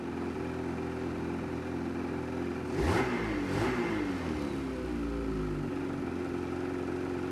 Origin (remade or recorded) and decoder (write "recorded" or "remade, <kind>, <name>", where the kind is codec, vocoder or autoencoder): recorded